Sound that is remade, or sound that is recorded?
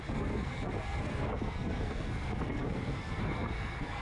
remade